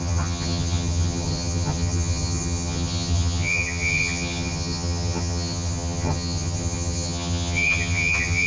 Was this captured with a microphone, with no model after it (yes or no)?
no